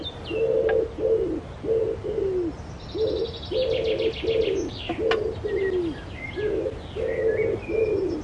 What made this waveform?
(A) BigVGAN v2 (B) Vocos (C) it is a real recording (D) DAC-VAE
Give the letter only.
C